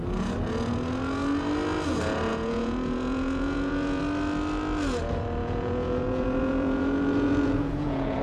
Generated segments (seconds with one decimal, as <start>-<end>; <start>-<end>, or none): 2.3-4.0; 5.4-8.2